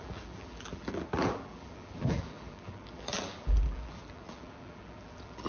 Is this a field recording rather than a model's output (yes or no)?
no